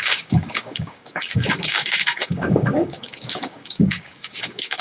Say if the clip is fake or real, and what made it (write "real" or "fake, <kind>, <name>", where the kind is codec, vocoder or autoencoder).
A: fake, codec, DAC